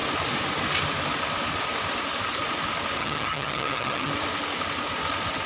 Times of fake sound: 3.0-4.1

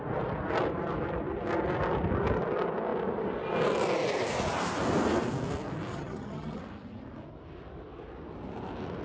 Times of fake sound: 5.9-6.6

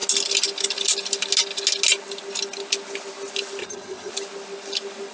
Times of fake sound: 3.6-4.1

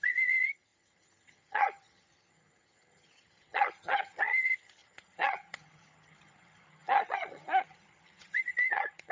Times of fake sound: 0.0-9.1